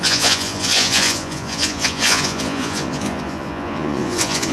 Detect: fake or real fake